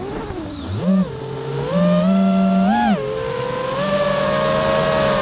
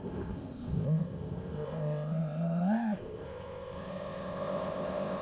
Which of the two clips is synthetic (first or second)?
second